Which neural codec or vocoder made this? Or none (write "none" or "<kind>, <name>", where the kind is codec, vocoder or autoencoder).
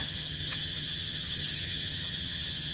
vocoder, HiFi-GAN